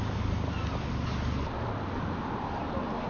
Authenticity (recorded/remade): recorded